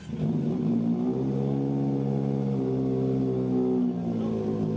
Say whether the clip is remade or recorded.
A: recorded